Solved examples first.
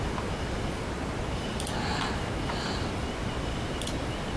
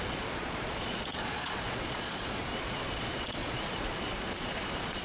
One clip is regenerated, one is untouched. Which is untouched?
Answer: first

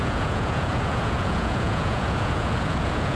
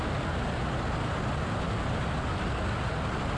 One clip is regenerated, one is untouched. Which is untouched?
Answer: second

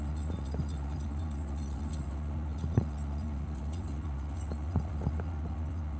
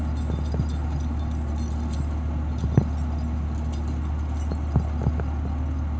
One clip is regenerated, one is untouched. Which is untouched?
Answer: second